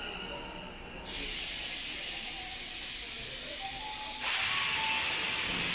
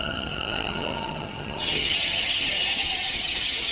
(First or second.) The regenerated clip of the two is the second